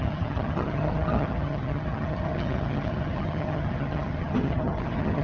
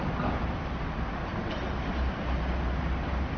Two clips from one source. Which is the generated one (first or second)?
first